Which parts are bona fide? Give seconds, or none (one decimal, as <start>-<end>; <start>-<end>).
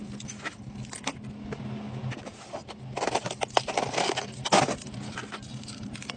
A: 0.0-6.2